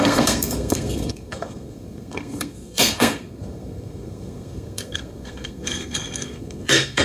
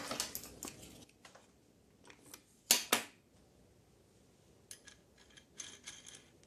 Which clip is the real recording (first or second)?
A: second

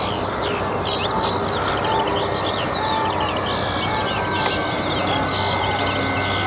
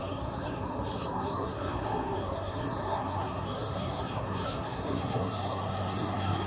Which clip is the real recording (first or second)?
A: first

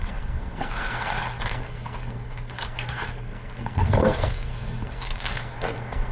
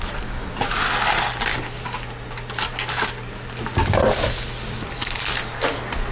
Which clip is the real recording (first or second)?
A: second